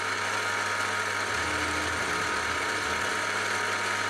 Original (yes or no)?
yes